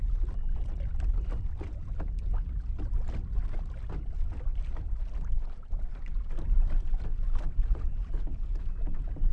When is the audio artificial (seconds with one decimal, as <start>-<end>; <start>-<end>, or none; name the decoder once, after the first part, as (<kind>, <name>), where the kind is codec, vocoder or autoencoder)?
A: 4.5-6.4 (vocoder, BigVGAN v2)